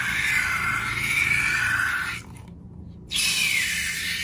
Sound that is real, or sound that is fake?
real